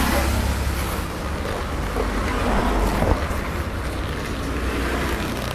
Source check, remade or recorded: recorded